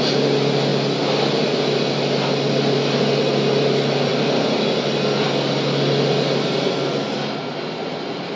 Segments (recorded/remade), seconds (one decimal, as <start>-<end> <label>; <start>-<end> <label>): 0.0-8.4 recorded